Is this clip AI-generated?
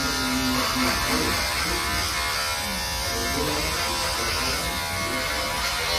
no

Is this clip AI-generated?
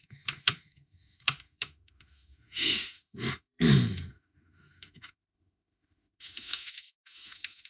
yes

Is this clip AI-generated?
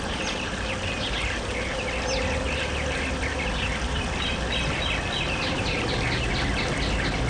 no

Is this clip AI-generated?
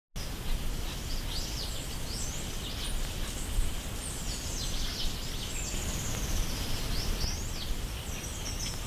no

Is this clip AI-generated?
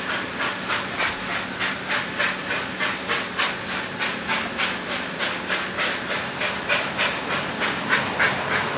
no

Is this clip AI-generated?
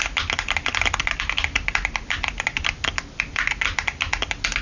no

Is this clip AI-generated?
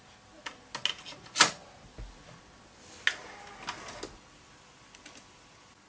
no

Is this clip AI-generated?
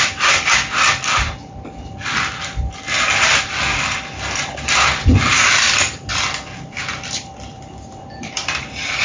yes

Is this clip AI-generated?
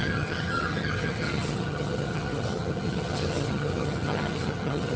yes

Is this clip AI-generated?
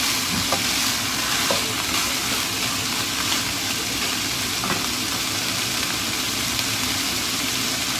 no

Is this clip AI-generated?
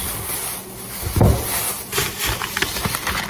no